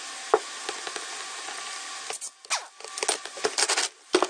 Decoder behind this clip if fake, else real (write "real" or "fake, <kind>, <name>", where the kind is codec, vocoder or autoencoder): real